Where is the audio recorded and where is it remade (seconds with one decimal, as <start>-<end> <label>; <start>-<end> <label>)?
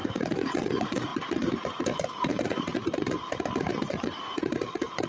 0.0-1.1 remade; 1.1-1.8 recorded; 1.8-5.1 remade